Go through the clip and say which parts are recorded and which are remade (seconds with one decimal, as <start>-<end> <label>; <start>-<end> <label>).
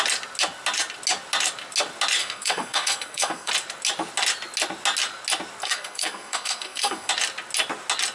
0.0-2.2 recorded; 2.2-3.5 remade; 3.5-5.6 recorded; 5.6-7.1 remade; 7.1-8.1 recorded